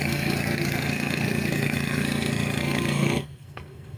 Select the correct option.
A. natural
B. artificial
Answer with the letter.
B